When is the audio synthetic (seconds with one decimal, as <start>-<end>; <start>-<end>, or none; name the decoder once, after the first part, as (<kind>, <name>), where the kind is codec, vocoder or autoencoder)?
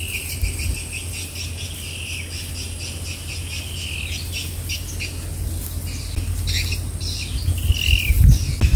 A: none